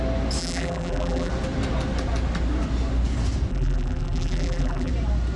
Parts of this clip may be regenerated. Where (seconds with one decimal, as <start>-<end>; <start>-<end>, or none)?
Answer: 0.4-1.3; 3.5-4.9